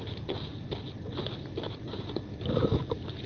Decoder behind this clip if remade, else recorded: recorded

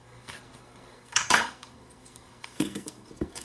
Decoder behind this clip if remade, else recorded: remade, codec, SNAC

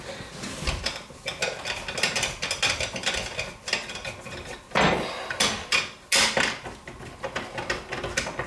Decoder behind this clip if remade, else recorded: recorded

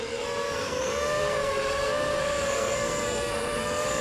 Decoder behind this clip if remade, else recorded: remade, codec, SNAC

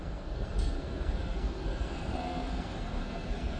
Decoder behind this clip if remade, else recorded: remade, codec, SNAC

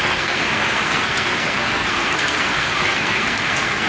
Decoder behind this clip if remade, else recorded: remade, codec, SNAC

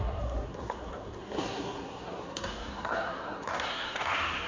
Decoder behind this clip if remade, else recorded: remade, codec, SNAC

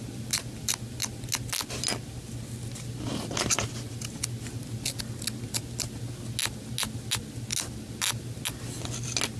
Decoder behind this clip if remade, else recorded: recorded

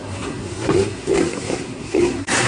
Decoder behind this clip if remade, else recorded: remade, codec, SNAC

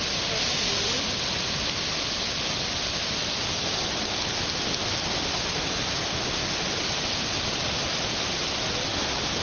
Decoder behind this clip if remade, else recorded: recorded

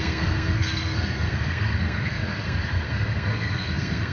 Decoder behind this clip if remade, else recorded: remade, codec, SNAC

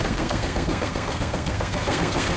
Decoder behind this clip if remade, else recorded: remade, codec, SNAC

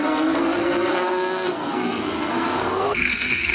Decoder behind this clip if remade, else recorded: remade, codec, SNAC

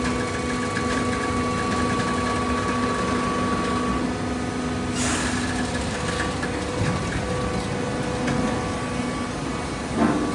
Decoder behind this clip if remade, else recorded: recorded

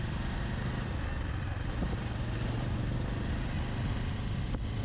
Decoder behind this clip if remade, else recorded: recorded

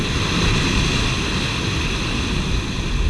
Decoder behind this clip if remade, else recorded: recorded